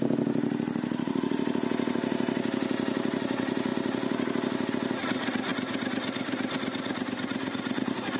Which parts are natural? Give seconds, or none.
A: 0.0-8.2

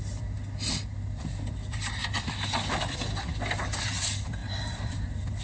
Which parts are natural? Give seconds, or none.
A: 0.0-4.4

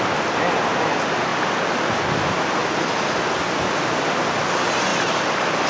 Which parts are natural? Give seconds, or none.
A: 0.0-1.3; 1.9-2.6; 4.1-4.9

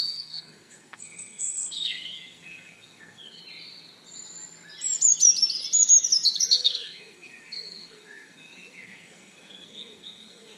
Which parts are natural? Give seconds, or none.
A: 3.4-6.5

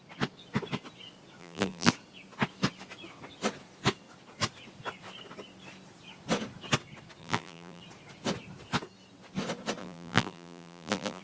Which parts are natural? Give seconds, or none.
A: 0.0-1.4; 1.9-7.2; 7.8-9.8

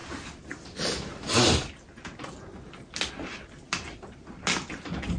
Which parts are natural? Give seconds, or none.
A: 0.0-5.2